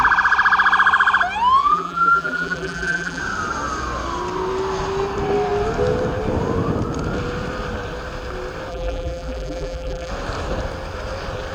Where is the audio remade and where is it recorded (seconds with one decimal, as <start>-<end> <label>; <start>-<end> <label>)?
0.0-1.6 recorded; 1.6-3.2 remade; 3.2-8.7 recorded; 8.7-10.1 remade; 10.1-11.5 recorded